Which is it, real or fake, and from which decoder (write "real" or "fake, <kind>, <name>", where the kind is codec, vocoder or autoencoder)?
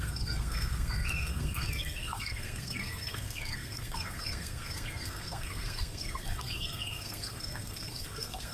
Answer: fake, codec, SNAC